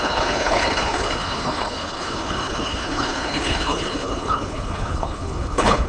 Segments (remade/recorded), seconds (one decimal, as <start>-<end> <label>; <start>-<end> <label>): 0.0-5.9 remade